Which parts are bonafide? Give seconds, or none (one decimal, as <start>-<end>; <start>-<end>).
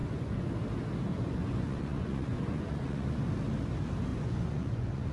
0.5-1.1; 3.2-4.1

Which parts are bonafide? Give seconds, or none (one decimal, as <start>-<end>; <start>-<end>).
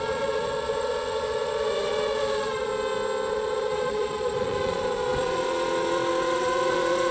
2.7-3.3